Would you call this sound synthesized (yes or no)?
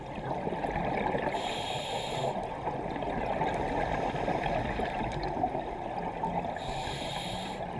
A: no